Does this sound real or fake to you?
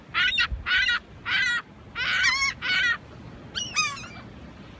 real